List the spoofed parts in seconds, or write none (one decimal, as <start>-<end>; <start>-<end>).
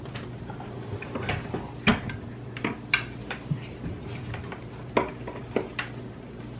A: none